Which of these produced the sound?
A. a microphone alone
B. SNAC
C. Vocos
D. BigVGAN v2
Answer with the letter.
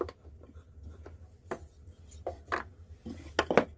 A